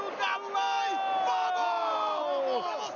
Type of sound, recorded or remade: recorded